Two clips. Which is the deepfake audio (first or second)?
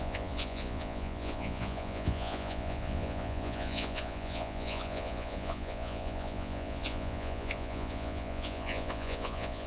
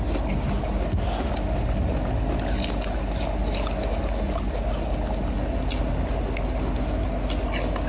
first